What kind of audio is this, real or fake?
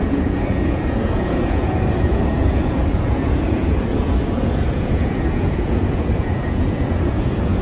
fake